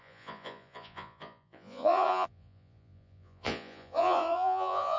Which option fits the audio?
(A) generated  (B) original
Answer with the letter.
A